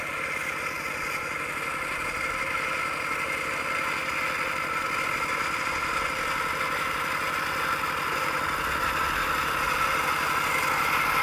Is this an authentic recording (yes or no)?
yes